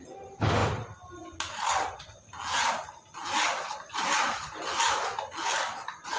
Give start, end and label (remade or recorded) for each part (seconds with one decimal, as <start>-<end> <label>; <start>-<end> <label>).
0.0-6.2 recorded